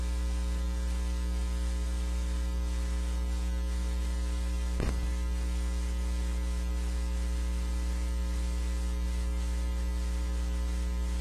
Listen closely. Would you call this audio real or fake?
real